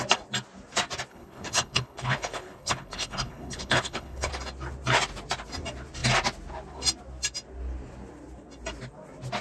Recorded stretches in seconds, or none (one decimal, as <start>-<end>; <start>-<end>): 0.0-1.1; 4.3-9.4